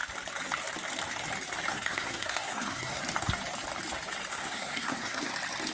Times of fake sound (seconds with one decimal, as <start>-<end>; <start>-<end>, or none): 1.7-3.0; 4.3-5.3